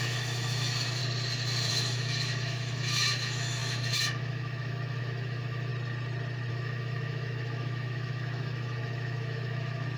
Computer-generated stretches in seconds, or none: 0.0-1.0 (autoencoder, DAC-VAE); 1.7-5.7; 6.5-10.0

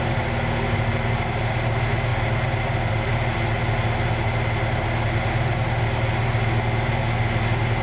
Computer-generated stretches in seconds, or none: none

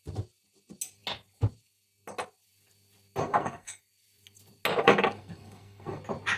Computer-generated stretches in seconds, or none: 3.2-3.8 (codec, SNAC); 4.8-6.0

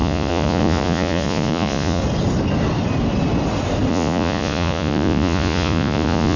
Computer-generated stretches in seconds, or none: 0.0-2.0 (vocoder, Vocos); 3.9-6.4

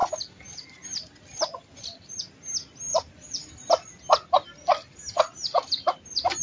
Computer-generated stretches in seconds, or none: 0.0-2.2 (vocoder, BigVGAN v2); 2.9-3.9

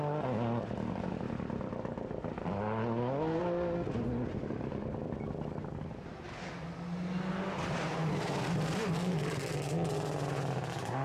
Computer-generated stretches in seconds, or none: none

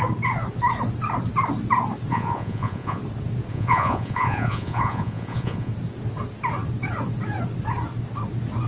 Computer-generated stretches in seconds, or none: 2.1-3.0 (vocoder, Vocos); 3.5-5.7